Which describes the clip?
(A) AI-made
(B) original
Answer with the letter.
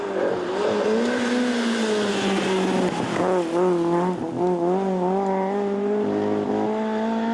B